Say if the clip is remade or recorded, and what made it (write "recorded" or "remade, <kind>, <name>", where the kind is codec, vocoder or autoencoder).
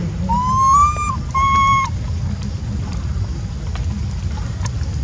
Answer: recorded